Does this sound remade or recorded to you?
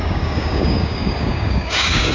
remade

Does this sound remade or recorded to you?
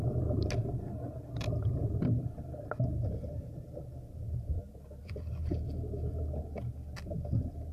recorded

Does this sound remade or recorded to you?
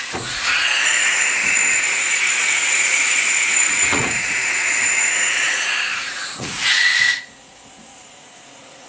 remade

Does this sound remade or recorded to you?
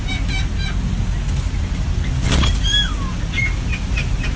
recorded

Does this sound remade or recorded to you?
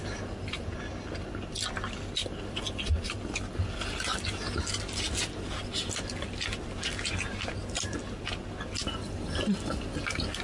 recorded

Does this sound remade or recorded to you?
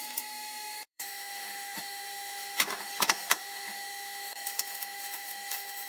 remade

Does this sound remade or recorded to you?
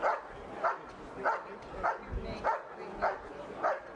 recorded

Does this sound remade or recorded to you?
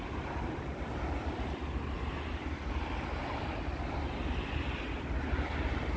recorded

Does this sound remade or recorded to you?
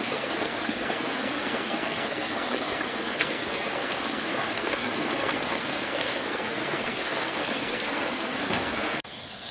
remade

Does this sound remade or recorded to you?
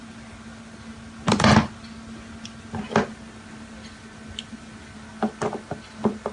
recorded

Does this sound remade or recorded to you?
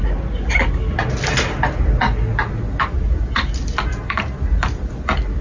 recorded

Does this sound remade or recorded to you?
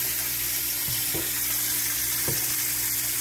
remade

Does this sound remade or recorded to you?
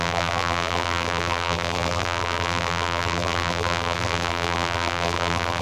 remade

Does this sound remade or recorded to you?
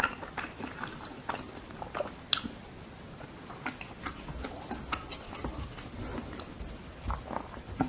recorded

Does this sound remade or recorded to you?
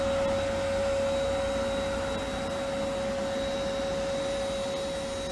recorded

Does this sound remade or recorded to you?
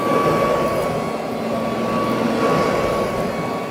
recorded